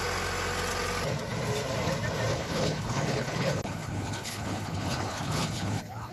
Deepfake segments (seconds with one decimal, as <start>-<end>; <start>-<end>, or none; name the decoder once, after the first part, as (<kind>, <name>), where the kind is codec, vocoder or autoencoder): 2.3-6.1 (codec, HILCodec)